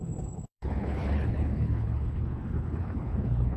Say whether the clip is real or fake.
fake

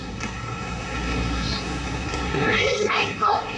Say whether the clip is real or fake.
fake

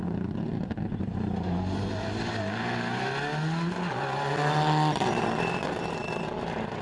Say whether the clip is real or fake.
real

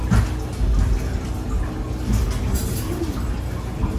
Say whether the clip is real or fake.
real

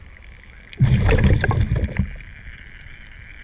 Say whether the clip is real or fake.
real